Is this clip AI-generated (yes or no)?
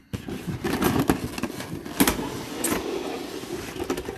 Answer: no